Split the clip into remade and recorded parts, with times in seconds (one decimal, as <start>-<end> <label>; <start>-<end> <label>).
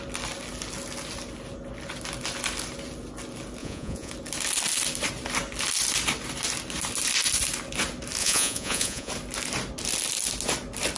0.0-3.6 recorded; 3.6-4.1 remade; 4.1-8.2 recorded; 8.2-9.1 remade; 9.1-11.0 recorded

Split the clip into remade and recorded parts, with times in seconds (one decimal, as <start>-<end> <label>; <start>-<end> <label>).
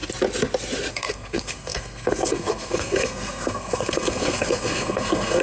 0.0-0.9 recorded; 0.9-5.4 remade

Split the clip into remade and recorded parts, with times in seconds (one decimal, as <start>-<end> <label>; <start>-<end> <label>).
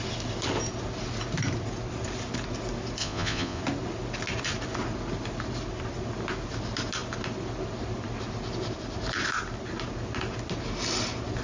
0.0-3.0 recorded; 3.0-3.6 remade; 3.6-11.4 recorded